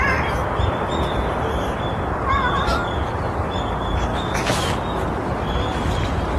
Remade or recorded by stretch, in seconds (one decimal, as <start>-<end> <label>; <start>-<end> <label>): 0.0-4.1 recorded; 4.1-5.0 remade; 5.0-6.4 recorded